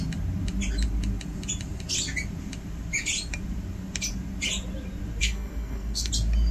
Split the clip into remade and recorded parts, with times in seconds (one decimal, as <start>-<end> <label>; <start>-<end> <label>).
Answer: 0.0-5.2 recorded; 5.2-6.1 remade; 6.1-6.5 recorded